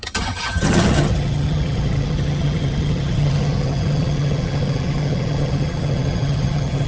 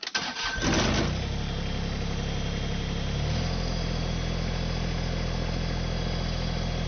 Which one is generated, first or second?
first